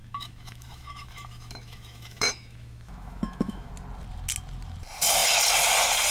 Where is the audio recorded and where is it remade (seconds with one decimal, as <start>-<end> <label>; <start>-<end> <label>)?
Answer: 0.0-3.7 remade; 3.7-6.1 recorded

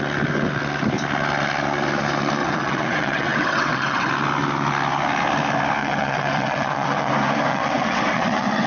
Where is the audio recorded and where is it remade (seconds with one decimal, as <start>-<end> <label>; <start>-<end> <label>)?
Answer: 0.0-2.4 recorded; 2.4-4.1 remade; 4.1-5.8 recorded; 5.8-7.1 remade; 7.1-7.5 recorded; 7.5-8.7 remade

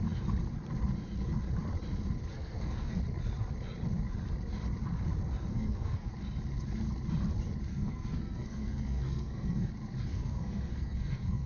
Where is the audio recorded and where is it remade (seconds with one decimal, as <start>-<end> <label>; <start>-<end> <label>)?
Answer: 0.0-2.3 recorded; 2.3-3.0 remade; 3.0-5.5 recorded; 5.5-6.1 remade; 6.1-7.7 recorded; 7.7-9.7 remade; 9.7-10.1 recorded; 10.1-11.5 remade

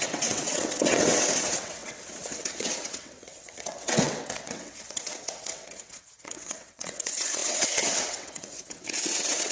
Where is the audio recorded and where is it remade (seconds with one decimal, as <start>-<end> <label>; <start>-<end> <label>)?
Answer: 0.0-9.5 remade